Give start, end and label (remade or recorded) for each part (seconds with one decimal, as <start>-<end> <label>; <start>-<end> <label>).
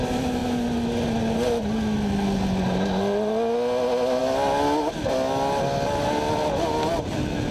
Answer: 0.0-7.5 recorded